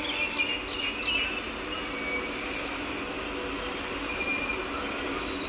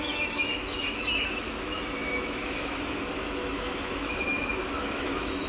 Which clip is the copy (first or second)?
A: second